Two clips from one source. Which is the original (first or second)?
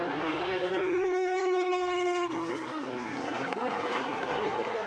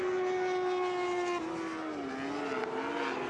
second